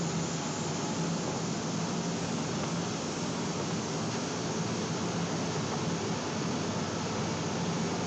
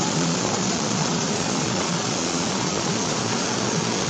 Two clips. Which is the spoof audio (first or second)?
second